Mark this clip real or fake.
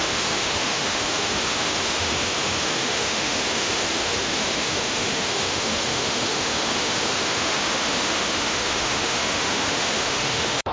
fake